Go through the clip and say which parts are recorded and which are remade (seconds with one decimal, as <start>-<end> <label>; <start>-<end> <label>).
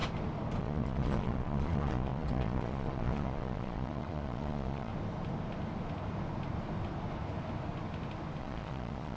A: 0.0-0.6 recorded; 0.6-4.9 remade; 4.9-8.4 recorded; 8.4-9.2 remade